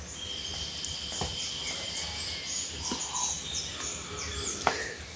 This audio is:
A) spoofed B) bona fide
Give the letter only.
B